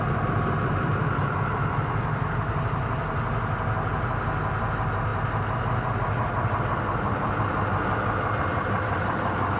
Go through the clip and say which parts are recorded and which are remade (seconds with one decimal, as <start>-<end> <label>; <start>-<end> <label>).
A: 0.0-9.6 recorded